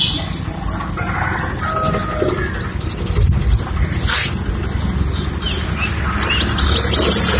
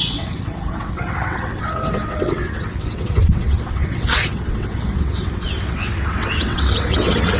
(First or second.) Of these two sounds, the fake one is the second